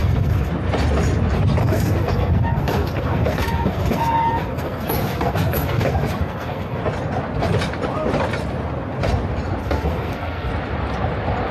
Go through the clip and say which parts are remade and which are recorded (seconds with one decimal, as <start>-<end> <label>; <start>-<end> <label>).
0.0-0.5 remade; 0.5-1.6 recorded; 1.6-6.8 remade; 6.8-9.6 recorded; 9.6-10.5 remade; 10.5-11.5 recorded